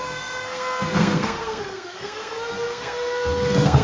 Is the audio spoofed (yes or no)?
yes